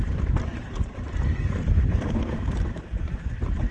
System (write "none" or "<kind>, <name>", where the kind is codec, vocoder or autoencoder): vocoder, BigVGAN v2